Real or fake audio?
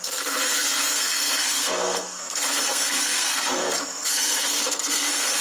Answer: fake